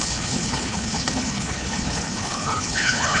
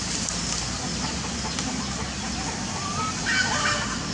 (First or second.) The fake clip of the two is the first